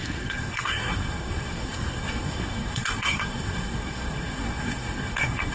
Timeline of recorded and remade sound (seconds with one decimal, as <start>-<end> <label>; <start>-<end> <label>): 0.0-5.5 remade